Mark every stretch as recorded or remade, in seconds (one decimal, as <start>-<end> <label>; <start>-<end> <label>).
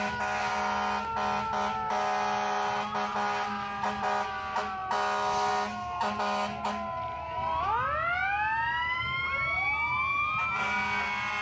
0.0-11.4 recorded